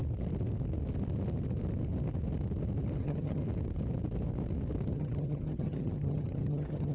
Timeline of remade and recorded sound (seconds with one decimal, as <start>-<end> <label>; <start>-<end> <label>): 0.0-3.0 recorded; 3.0-3.4 remade; 3.4-4.9 recorded; 4.9-6.9 remade